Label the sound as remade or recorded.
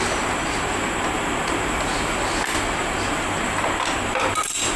recorded